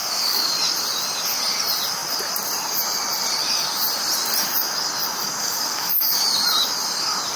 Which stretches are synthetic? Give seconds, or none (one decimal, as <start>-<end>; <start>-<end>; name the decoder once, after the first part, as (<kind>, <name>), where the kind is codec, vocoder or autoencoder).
0.0-0.5 (codec, DAC); 5.4-6.2